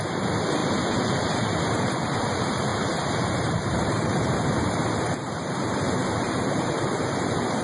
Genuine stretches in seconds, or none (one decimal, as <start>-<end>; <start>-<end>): none